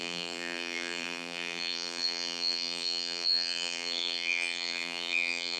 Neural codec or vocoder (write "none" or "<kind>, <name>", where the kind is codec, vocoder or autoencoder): vocoder, BigVGAN v2